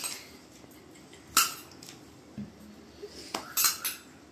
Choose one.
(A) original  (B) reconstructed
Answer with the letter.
A